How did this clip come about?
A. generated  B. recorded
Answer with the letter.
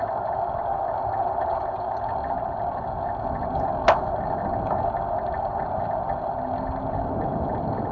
B